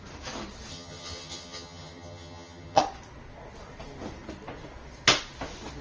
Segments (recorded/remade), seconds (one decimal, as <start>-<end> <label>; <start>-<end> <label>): 0.0-0.7 recorded; 0.7-2.8 remade; 2.8-5.8 recorded